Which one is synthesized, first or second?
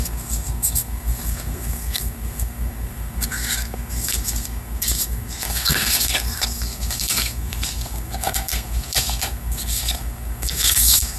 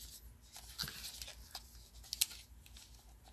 first